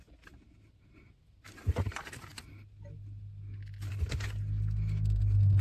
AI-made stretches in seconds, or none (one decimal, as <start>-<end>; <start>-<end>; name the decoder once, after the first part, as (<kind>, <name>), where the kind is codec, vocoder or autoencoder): none